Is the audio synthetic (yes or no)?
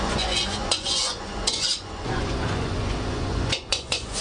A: yes